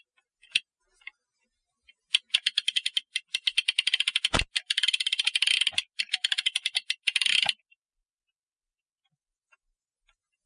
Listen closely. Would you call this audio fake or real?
real